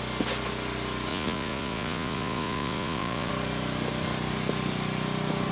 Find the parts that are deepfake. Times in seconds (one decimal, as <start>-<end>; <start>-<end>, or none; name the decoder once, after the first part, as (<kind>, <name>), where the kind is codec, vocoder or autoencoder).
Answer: 1.1-3.3 (vocoder, Vocos)